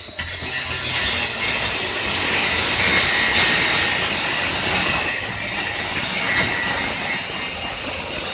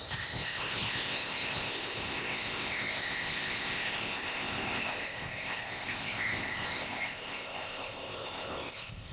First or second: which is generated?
second